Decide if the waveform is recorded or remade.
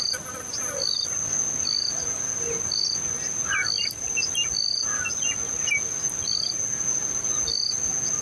recorded